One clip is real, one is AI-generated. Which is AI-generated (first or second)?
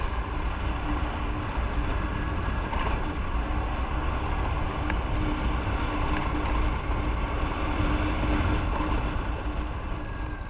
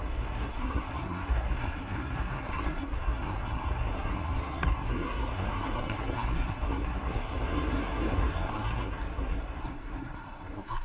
second